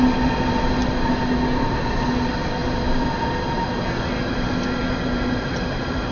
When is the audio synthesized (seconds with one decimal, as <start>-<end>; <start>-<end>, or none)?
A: none